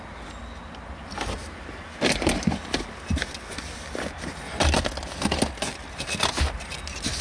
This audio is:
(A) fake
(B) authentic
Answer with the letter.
B